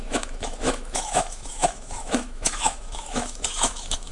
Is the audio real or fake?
fake